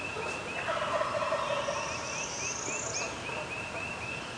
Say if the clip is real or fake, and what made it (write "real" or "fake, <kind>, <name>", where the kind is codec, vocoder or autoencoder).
real